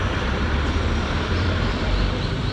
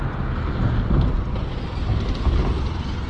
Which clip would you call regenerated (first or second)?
first